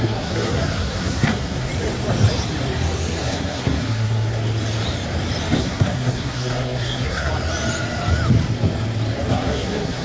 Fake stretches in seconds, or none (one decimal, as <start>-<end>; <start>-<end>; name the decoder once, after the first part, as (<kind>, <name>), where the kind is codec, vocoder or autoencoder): 0.0-1.7 (codec, SNAC); 3.2-4.4; 5.6-7.3; 9.3-10.0